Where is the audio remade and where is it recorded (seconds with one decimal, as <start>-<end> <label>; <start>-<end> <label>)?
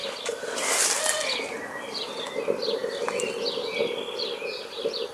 0.0-2.4 remade; 2.4-2.8 recorded; 2.8-3.3 remade; 3.3-5.1 recorded